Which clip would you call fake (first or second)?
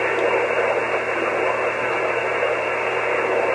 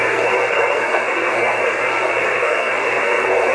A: second